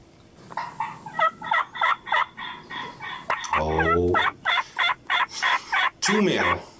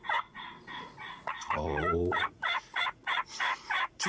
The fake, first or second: second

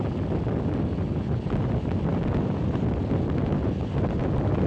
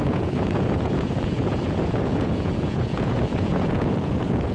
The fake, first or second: second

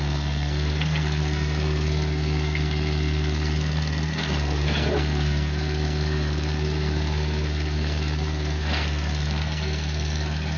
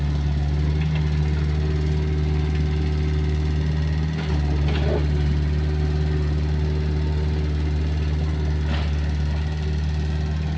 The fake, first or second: first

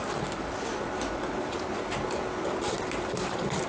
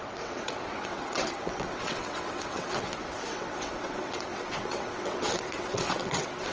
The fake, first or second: second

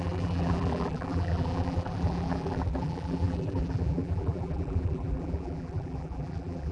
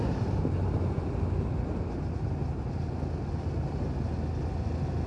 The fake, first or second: first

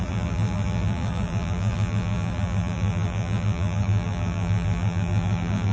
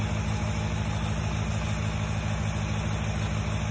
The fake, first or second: first